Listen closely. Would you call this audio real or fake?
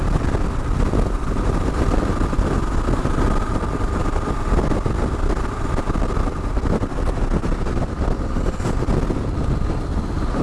real